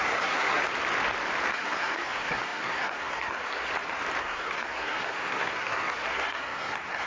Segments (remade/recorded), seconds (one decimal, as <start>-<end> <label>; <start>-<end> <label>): 0.0-0.6 remade; 0.6-1.5 recorded; 1.5-3.7 remade; 3.7-4.2 recorded; 4.2-7.1 remade